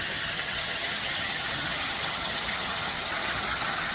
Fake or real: fake